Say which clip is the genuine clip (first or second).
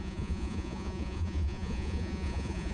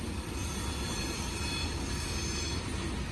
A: second